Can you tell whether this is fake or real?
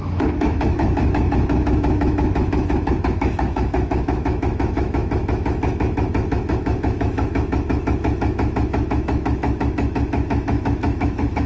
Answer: fake